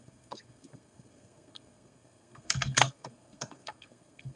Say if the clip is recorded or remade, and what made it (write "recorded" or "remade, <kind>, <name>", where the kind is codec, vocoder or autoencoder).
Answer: remade, codec, SNAC